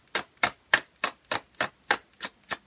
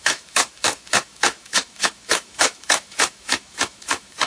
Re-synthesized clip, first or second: second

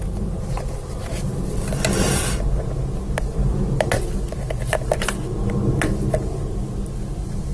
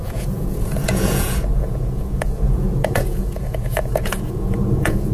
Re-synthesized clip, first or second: second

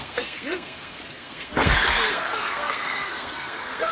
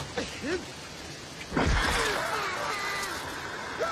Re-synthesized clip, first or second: first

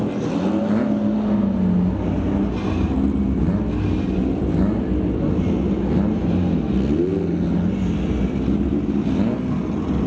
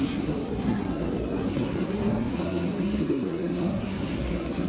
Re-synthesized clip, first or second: second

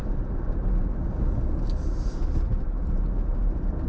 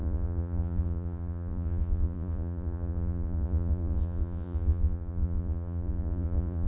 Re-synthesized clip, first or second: second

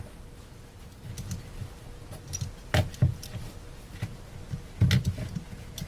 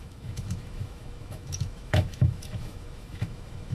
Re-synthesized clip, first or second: second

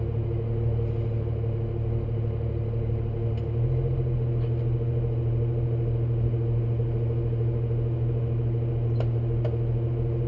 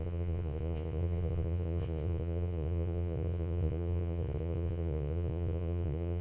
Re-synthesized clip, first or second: second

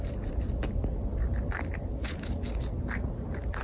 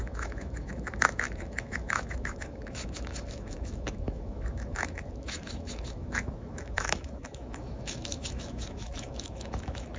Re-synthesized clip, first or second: second